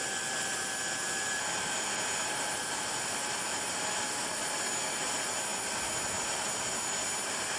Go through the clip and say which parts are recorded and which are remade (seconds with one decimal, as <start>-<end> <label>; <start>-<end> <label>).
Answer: 0.0-7.6 recorded